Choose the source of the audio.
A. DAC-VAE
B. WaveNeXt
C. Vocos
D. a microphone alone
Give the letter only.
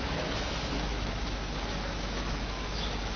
A